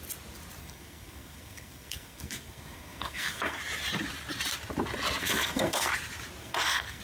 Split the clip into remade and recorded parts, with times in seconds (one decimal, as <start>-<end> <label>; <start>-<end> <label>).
0.0-0.6 recorded; 0.6-3.6 remade; 3.6-5.2 recorded; 5.2-5.9 remade; 5.9-6.4 recorded; 6.4-7.0 remade

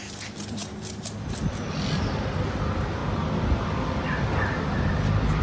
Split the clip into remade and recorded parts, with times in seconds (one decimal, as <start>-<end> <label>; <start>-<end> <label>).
0.0-5.4 recorded

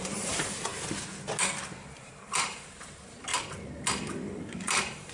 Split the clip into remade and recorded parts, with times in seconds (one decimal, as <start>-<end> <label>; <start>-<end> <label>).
0.0-0.7 remade; 0.7-1.9 recorded; 1.9-3.3 remade; 3.3-4.4 recorded; 4.4-5.1 remade

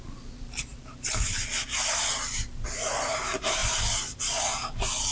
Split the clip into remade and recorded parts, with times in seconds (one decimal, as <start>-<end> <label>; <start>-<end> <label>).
0.0-5.1 recorded

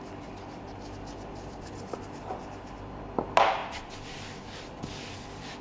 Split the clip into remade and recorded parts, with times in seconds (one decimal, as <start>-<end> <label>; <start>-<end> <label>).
0.0-5.6 recorded

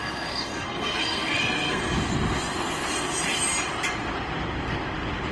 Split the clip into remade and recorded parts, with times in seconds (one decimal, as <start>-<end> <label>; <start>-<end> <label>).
0.0-1.8 remade; 1.8-5.3 recorded

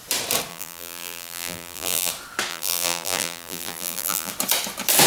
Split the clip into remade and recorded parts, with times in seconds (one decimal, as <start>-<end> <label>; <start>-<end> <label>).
0.0-0.5 recorded; 0.5-2.1 remade; 2.1-2.5 recorded; 2.5-4.3 remade; 4.3-5.1 recorded

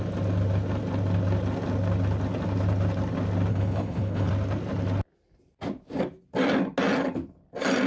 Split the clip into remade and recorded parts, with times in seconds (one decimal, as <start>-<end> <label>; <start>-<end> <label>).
0.0-3.5 recorded; 3.5-4.3 remade; 4.3-7.9 recorded